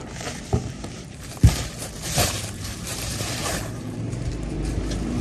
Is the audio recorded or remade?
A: remade